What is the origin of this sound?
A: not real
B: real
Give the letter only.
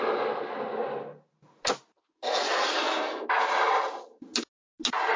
B